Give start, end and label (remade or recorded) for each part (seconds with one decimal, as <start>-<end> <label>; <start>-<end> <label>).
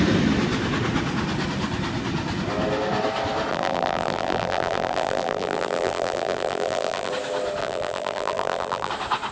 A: 0.0-3.5 recorded; 3.5-7.1 remade; 7.1-7.6 recorded; 7.6-8.9 remade; 8.9-9.3 recorded